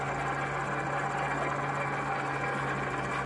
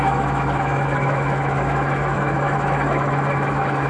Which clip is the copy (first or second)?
second